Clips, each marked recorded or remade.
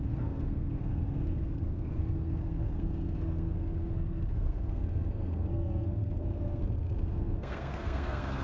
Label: remade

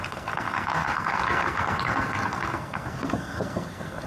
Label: remade